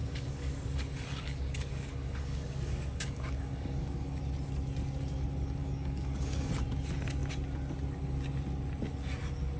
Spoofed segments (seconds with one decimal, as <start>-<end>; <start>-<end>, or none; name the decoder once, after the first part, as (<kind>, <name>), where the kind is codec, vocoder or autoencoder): 0.0-4.2 (codec, DAC); 5.6-6.5